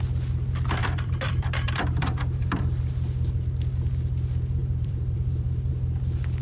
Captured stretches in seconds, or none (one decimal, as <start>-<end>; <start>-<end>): 0.0-0.8; 2.9-4.6; 5.7-6.4